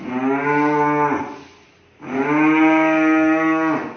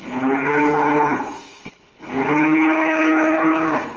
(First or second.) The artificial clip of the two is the second